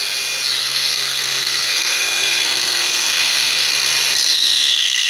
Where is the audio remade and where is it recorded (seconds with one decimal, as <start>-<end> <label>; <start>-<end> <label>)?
0.0-0.6 recorded; 0.6-3.7 remade; 3.7-4.3 recorded; 4.3-5.1 remade